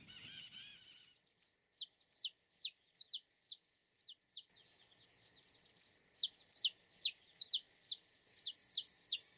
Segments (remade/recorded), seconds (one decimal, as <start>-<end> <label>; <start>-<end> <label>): 0.0-9.4 recorded